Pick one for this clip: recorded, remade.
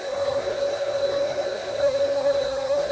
remade